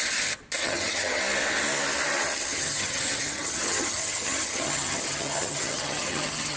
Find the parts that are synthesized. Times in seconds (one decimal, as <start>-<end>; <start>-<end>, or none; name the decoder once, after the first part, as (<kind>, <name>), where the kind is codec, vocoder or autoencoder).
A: 0.6-1.2 (vocoder, HiFi-GAN); 2.5-6.6